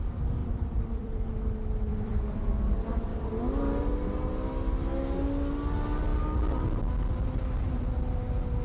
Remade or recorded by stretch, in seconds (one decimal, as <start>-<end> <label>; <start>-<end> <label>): 0.0-0.4 recorded; 0.4-1.3 remade; 1.3-1.9 recorded; 1.9-2.7 remade; 2.7-8.6 recorded